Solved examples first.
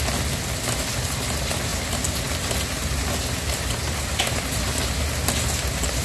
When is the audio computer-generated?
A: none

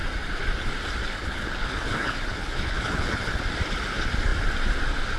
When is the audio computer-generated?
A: 1.0-3.4 (codec, HILCodec)

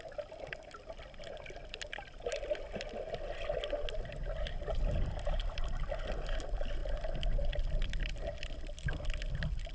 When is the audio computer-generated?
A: none